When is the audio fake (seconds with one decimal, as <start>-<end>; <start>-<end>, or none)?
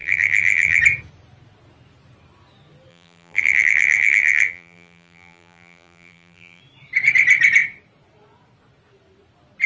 0.0-0.8; 2.9-6.6